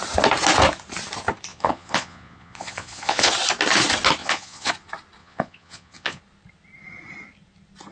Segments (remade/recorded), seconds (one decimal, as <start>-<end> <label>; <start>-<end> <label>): 0.0-1.5 recorded; 1.5-3.3 remade; 3.3-4.2 recorded; 4.2-4.7 remade; 4.7-5.2 recorded; 5.2-6.2 remade; 6.2-7.9 recorded